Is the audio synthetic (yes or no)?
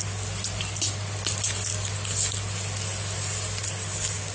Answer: no